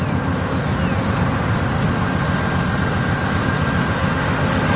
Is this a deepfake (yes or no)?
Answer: no